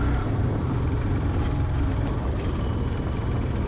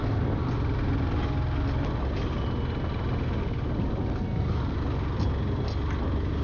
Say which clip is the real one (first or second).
second